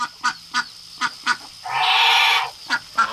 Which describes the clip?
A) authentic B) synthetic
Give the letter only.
A